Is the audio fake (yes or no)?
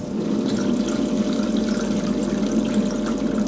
no